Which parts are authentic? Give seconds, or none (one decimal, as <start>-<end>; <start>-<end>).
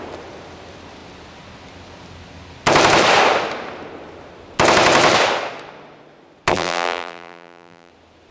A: 0.0-6.5; 7.9-8.3